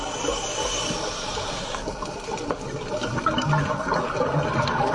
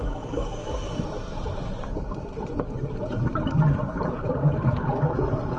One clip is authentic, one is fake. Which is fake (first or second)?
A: second